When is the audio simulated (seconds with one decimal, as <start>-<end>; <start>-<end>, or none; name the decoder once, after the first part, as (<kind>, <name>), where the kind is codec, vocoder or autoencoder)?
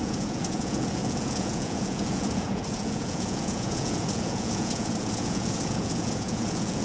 0.0-6.8 (vocoder, Vocos)